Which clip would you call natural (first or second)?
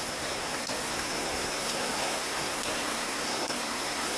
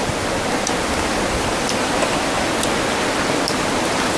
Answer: second